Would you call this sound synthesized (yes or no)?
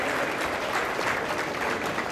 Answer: no